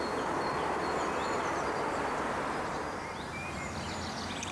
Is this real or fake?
real